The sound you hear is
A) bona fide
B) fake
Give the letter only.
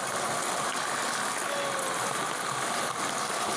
A